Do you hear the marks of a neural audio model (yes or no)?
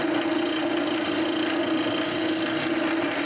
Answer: no